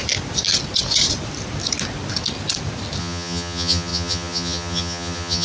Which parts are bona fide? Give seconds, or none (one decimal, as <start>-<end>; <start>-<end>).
0.0-3.0